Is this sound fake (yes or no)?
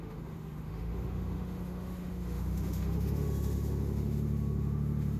yes